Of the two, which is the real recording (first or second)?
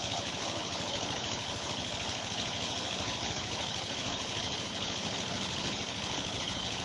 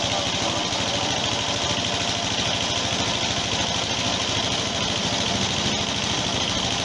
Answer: second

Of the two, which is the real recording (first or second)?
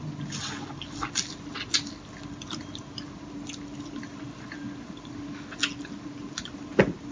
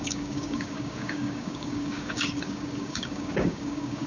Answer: first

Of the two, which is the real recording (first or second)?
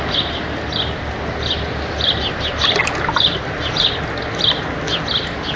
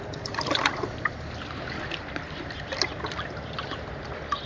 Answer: first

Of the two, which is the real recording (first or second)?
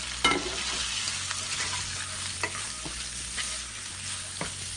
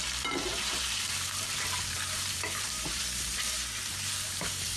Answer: first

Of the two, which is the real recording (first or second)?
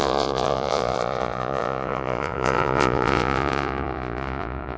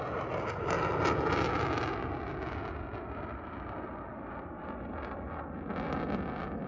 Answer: second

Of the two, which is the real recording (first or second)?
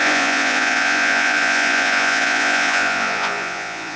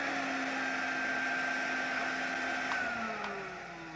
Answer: second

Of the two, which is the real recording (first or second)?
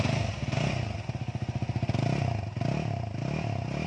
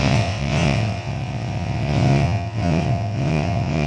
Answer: first